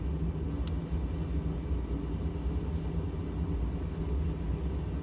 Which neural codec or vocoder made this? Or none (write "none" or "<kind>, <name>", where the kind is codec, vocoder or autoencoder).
none